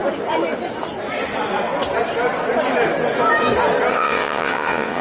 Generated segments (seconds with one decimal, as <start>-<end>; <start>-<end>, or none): 3.9-5.0